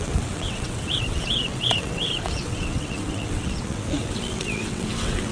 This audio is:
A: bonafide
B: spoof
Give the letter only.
B